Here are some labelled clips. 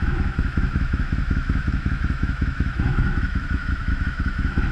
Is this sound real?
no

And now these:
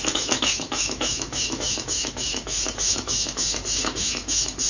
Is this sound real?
no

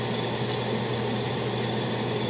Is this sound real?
yes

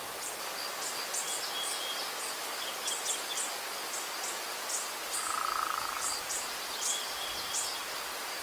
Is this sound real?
yes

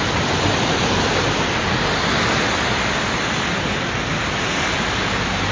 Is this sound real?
yes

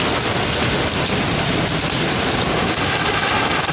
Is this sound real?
yes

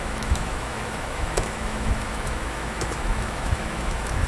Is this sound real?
no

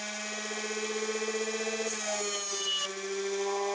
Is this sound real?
yes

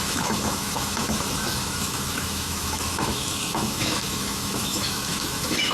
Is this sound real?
no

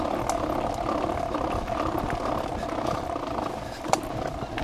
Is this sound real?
yes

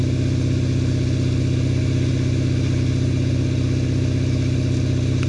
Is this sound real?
yes